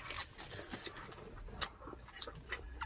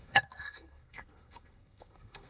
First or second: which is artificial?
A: second